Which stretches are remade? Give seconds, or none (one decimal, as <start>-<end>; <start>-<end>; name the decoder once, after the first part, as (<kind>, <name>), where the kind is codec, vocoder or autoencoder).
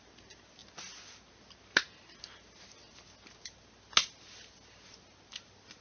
none